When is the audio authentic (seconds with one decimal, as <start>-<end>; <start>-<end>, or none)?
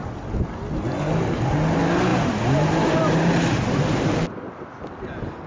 0.0-5.5